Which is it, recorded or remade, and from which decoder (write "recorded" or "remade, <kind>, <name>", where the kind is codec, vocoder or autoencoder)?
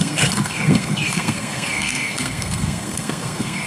remade, codec, SNAC